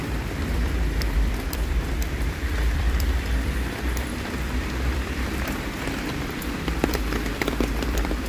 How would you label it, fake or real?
fake